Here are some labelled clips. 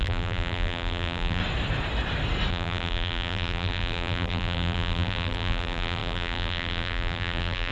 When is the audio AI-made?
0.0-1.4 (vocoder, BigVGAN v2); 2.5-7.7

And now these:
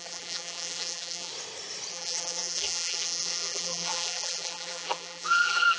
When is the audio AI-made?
0.0-1.3 (vocoder, BigVGAN v2); 1.9-5.8

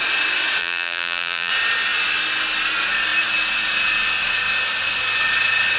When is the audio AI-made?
0.6-1.5 (vocoder, BigVGAN v2)

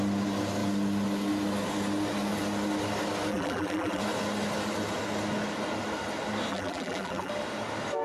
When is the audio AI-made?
3.3-4.0 (vocoder, BigVGAN v2); 6.5-7.3

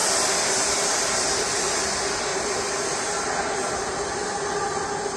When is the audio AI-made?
none

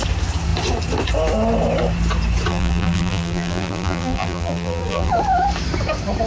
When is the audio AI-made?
2.5-5.1 (vocoder, BigVGAN v2)

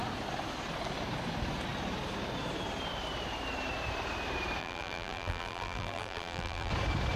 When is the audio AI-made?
4.6-6.7 (vocoder, BigVGAN v2)

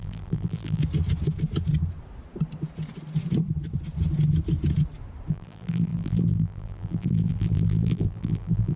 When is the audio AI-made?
0.0-0.8 (vocoder, BigVGAN v2); 5.3-8.8